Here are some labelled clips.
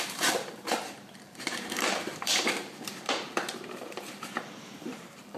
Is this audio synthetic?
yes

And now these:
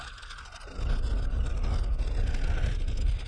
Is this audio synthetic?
no